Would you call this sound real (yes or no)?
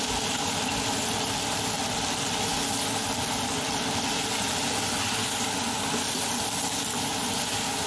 yes